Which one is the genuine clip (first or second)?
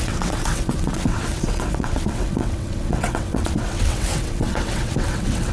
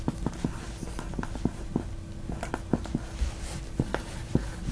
second